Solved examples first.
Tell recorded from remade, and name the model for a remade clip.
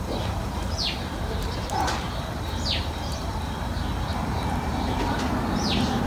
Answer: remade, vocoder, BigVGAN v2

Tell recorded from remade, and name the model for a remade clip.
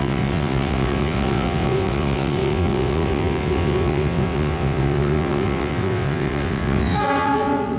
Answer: remade, vocoder, WaveNeXt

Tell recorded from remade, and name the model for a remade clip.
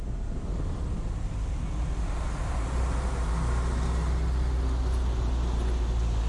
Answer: recorded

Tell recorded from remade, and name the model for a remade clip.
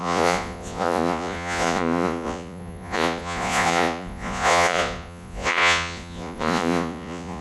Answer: remade, vocoder, Vocos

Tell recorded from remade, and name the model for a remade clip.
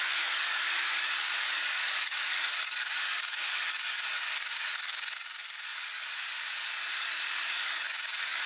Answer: remade, codec, DAC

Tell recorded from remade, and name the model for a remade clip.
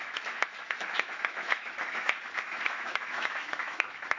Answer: remade, autoencoder, DAC-VAE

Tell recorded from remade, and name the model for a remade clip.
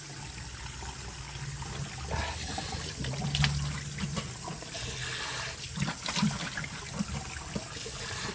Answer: recorded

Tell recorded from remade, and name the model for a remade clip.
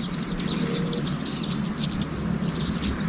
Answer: recorded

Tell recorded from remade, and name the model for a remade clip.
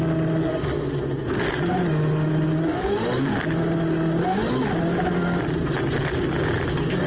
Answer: recorded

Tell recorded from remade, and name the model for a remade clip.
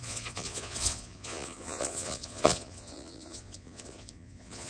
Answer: remade, vocoder, Vocos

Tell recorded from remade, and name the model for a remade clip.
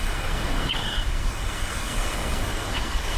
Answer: remade, codec, SNAC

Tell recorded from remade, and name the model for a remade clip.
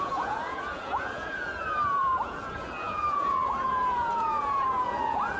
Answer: remade, vocoder, Vocos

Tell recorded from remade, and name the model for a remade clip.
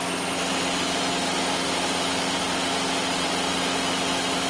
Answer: recorded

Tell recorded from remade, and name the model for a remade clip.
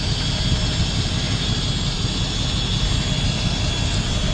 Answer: recorded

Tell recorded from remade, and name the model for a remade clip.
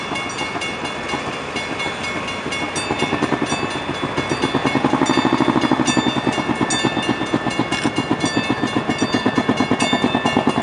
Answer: recorded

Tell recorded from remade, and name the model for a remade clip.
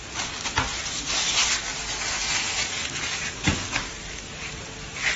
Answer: recorded